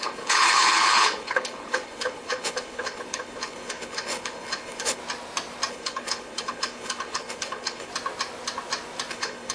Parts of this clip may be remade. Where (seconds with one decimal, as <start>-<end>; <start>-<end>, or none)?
0.0-5.0; 5.7-7.9; 9.1-9.5